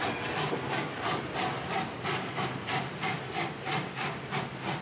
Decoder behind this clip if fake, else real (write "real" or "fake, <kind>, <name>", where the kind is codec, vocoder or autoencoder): real